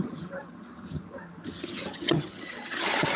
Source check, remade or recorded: remade